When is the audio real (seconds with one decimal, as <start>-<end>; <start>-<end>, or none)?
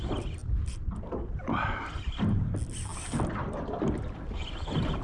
0.0-5.0